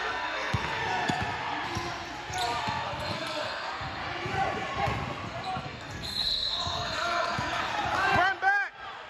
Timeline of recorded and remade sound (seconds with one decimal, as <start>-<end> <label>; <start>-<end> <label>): 0.0-0.8 remade; 0.8-2.6 recorded; 2.6-4.0 remade; 4.0-5.6 recorded; 5.6-7.7 remade; 7.7-9.1 recorded